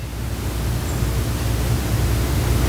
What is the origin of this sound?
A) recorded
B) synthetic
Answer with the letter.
A